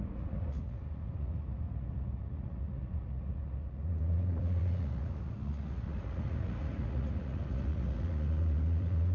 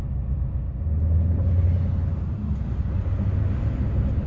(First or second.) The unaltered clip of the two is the second